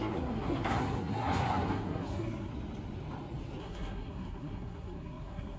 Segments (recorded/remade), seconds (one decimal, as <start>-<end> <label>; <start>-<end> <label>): 0.0-2.5 remade; 2.5-3.6 recorded; 3.6-5.6 remade